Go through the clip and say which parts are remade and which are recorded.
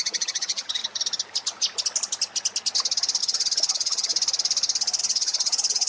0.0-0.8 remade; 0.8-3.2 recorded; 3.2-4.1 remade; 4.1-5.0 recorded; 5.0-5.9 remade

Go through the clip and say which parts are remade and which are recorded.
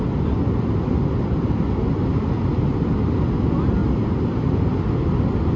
0.0-5.6 recorded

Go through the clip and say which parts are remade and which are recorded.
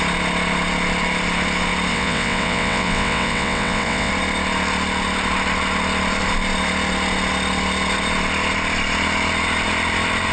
0.0-1.9 recorded; 1.9-4.1 remade; 4.1-10.3 recorded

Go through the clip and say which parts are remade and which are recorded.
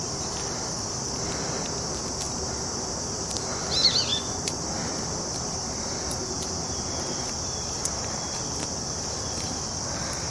0.0-4.1 recorded; 4.1-4.6 remade; 4.6-10.3 recorded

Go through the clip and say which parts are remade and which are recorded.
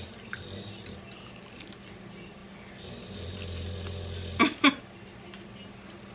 0.0-6.1 recorded